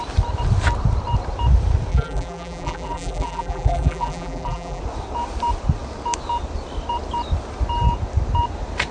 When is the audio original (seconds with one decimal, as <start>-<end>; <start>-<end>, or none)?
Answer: 0.0-1.9; 4.8-8.9

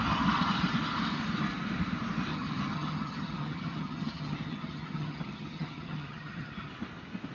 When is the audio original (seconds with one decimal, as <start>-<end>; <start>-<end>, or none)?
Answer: 0.0-2.3; 6.7-7.3